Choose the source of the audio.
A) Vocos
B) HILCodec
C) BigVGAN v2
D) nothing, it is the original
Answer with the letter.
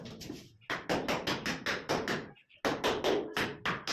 D